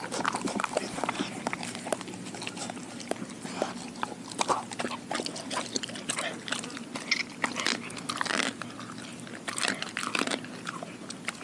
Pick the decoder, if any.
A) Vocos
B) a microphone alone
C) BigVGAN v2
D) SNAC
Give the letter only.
B